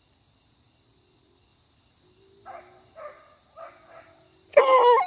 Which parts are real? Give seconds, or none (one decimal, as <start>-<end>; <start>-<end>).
0.0-5.1